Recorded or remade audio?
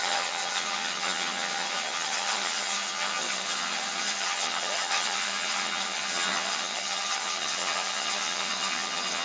remade